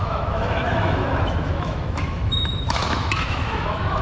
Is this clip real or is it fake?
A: fake